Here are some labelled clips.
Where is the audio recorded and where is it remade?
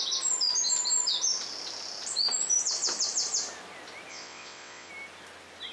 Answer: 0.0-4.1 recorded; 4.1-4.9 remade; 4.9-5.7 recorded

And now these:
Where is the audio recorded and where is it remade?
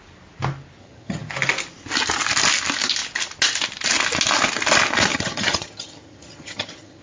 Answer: 0.0-0.8 recorded; 0.8-1.3 remade; 1.3-5.1 recorded; 5.1-7.0 remade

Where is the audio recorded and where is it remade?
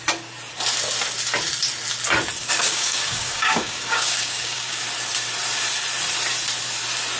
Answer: 0.0-2.4 recorded; 2.4-4.8 remade; 4.8-7.2 recorded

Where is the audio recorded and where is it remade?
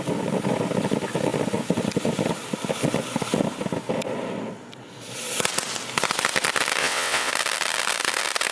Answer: 0.0-6.8 recorded; 6.8-7.3 remade; 7.3-8.5 recorded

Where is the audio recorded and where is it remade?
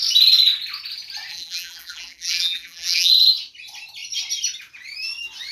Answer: 0.0-1.3 recorded; 1.3-3.1 remade; 3.1-5.5 recorded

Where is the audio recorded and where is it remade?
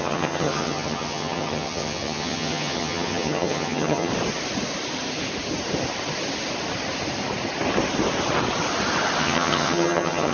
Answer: 0.0-4.1 remade; 4.1-9.2 recorded; 9.2-10.3 remade